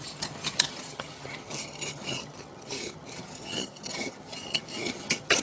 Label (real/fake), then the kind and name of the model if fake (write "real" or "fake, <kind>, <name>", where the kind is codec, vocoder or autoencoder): fake, vocoder, HiFi-GAN